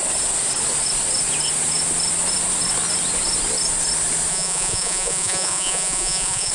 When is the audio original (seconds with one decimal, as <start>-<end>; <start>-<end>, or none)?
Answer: 0.0-4.3